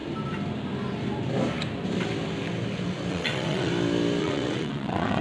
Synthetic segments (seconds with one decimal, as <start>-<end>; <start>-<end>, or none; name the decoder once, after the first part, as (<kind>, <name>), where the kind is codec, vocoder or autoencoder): 3.1-3.7 (vocoder, WaveNeXt); 4.2-5.2